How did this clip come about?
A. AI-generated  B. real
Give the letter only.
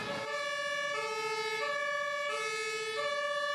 B